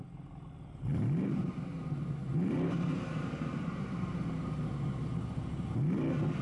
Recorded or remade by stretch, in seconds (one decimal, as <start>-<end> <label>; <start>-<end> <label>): 0.0-0.9 recorded; 0.9-4.7 remade; 4.7-6.4 recorded